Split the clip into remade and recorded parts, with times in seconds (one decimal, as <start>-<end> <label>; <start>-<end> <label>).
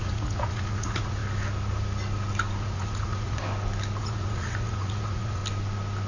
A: 0.0-1.2 remade; 1.2-2.6 recorded; 2.6-3.4 remade; 3.4-4.0 recorded; 4.0-5.4 remade; 5.4-6.1 recorded